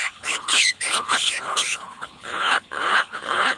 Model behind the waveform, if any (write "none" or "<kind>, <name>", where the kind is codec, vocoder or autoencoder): codec, HILCodec